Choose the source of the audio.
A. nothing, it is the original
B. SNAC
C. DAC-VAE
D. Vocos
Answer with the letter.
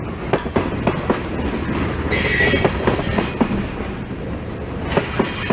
A